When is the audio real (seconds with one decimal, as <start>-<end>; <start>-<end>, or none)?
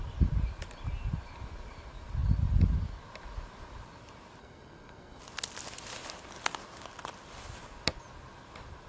0.0-4.4; 5.2-8.9